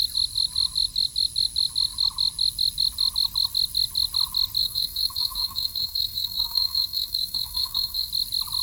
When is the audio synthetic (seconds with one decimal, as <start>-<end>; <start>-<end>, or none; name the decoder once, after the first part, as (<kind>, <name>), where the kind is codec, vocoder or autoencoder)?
4.6-8.1 (codec, SNAC)